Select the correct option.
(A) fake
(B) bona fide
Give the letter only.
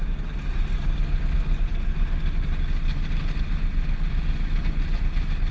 B